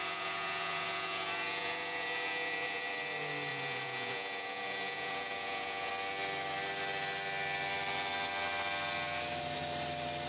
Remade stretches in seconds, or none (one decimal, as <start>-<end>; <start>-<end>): 0.0-2.9; 3.5-5.9